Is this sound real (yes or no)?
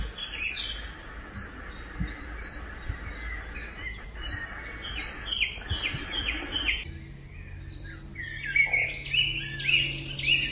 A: yes